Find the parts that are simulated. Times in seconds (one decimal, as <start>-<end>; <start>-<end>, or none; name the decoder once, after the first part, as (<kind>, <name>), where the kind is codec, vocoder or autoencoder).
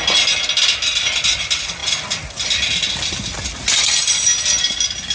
none